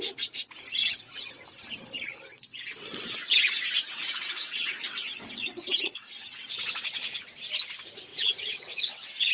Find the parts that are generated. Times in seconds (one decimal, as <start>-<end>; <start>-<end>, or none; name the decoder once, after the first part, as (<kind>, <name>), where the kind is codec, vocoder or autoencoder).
0.8-1.4 (vocoder, WaveNeXt); 2.3-7.2; 8.1-9.3